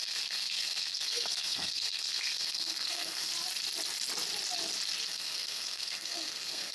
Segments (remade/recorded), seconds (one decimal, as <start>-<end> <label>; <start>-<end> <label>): 0.0-3.3 remade; 3.3-5.1 recorded; 5.1-6.7 remade